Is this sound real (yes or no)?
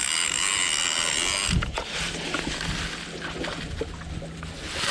yes